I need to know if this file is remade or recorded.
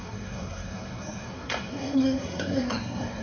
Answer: remade